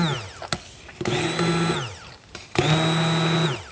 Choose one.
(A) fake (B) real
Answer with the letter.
B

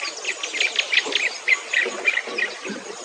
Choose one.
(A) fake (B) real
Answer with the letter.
B